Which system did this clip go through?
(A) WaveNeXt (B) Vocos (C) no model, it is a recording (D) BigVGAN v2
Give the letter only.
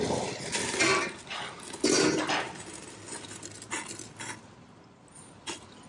C